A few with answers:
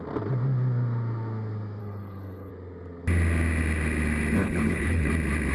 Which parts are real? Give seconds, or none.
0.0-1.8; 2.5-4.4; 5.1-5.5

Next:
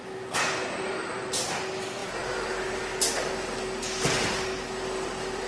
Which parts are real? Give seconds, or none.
0.0-5.5